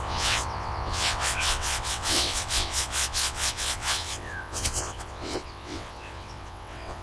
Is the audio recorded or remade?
remade